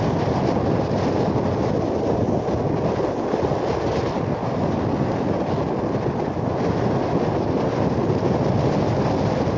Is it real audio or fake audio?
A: real